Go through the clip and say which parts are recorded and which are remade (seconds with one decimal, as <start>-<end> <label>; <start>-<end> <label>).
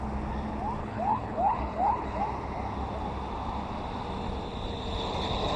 0.0-0.8 recorded; 0.8-2.2 remade; 2.2-5.6 recorded